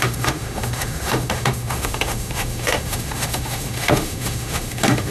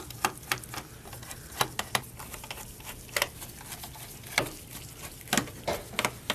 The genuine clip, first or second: second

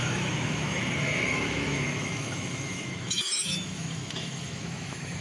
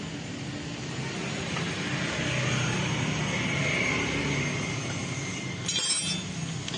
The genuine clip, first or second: second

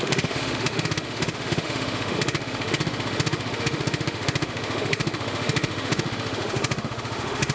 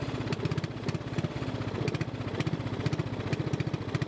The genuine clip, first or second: second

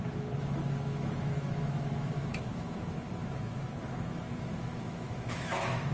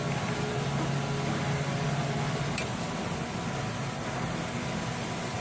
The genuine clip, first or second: second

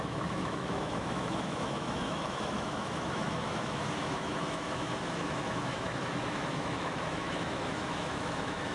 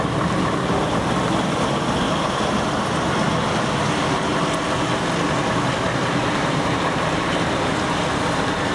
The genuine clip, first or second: second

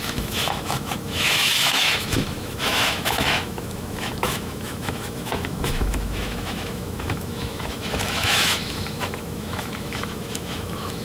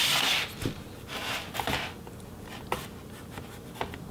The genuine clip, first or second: second